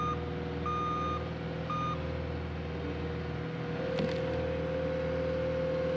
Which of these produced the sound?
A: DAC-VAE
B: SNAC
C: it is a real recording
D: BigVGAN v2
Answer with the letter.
C